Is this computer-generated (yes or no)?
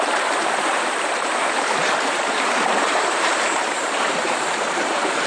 yes